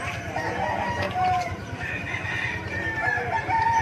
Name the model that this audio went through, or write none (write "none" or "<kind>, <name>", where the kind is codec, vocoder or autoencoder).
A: none